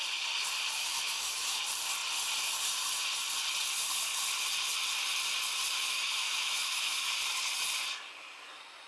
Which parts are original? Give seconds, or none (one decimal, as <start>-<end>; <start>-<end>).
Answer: 0.0-0.8; 1.6-5.8; 7.1-8.9

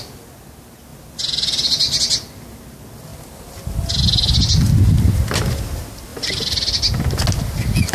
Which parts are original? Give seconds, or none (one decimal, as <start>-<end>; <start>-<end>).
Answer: 0.0-7.9